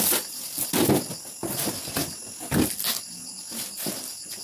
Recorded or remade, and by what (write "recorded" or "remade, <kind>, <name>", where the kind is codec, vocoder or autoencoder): recorded